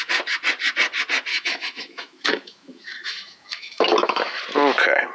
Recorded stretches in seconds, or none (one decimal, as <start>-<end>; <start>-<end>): 0.0-1.3; 4.4-5.1